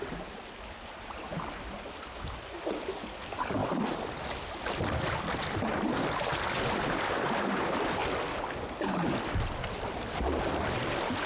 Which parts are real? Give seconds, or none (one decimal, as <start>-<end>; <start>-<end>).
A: 0.0-11.3